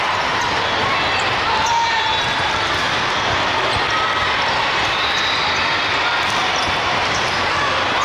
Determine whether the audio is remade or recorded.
recorded